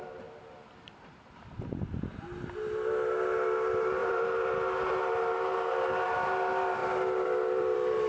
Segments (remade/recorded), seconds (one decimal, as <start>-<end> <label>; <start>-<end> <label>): 0.0-4.0 recorded; 4.0-4.9 remade; 4.9-6.8 recorded; 6.8-8.1 remade